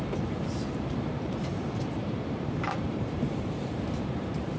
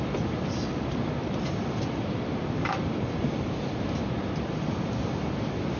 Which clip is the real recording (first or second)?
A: second